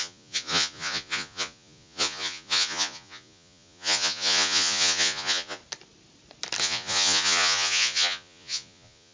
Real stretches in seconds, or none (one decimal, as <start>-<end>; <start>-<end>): 5.6-6.6